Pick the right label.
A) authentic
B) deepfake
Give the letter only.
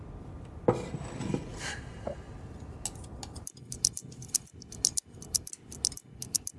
A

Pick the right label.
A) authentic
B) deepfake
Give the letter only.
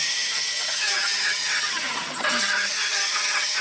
B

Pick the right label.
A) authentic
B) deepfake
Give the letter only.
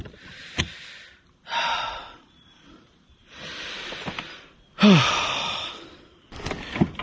A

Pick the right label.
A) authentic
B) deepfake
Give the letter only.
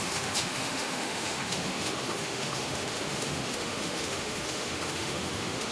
B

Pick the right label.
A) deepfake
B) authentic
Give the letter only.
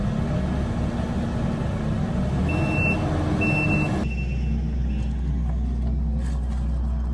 B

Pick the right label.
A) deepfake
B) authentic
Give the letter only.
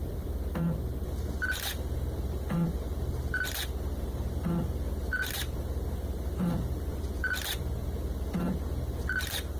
A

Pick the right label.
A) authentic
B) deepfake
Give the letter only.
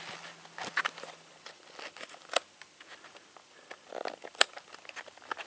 A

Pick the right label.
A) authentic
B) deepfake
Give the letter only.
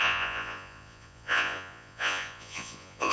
B